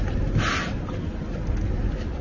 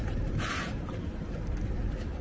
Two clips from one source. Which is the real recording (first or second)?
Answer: first